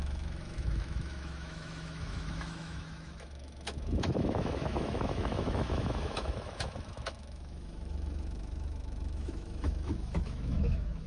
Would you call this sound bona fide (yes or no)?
no